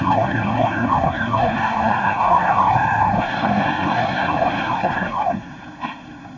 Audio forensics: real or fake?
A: fake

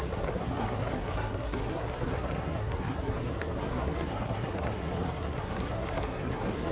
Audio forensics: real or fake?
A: fake